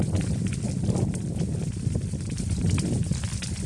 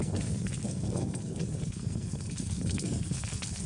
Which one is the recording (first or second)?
first